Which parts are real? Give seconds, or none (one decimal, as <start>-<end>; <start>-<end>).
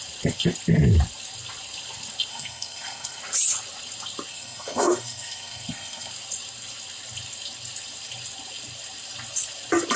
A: 0.0-2.3; 3.2-4.3; 6.1-10.0